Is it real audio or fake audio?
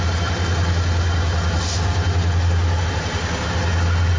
real